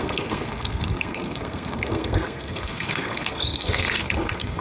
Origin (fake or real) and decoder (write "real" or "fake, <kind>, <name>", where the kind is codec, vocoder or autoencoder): fake, codec, SNAC